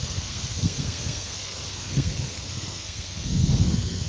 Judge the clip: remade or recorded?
remade